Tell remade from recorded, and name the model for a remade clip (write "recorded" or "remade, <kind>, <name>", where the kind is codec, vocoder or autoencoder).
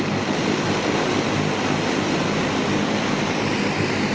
recorded